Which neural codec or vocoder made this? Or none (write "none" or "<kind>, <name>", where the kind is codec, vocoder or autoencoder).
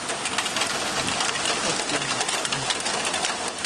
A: none